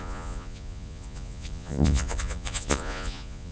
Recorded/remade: remade